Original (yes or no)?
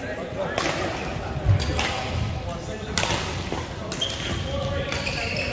yes